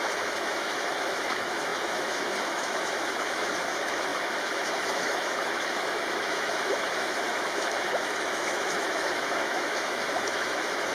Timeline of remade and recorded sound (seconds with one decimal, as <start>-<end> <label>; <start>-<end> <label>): 0.0-10.9 remade